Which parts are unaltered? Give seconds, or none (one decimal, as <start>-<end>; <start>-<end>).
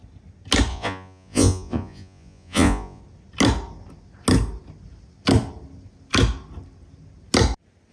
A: 0.0-0.7; 3.0-7.9